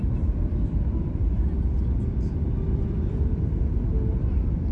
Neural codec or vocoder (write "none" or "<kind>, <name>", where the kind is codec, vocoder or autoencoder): vocoder, BigVGAN v2